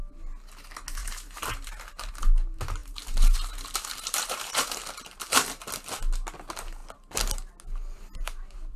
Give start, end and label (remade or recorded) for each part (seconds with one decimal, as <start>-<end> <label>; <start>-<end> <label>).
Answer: 0.0-1.0 recorded; 1.0-2.1 remade; 2.1-2.8 recorded; 2.8-4.8 remade; 4.8-8.8 recorded

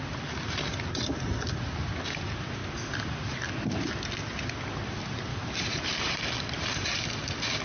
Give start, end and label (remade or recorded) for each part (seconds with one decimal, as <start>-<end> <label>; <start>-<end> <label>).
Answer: 0.0-5.3 recorded; 5.3-6.2 remade; 6.2-7.6 recorded

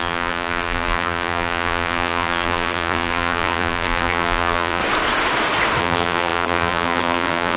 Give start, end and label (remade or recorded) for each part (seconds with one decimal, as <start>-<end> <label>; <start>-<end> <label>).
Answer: 0.0-4.8 remade; 4.8-5.8 recorded; 5.8-7.6 remade